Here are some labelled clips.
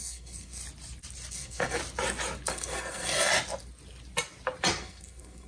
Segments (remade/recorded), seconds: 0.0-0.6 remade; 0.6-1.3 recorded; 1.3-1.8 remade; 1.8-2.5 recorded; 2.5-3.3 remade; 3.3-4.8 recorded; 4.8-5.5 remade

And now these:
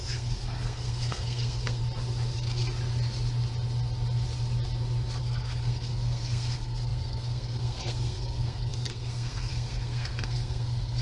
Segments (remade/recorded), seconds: 0.0-1.8 remade; 1.8-5.2 recorded; 5.2-11.0 remade

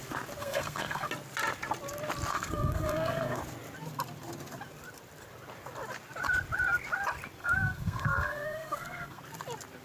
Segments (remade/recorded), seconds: 0.0-0.4 recorded; 0.4-1.1 remade; 1.1-2.3 recorded; 2.3-3.4 remade; 3.4-7.4 recorded; 7.4-9.2 remade; 9.2-9.8 recorded